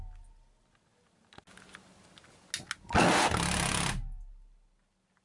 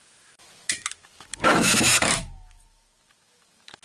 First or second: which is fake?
second